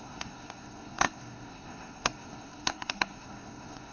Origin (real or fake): fake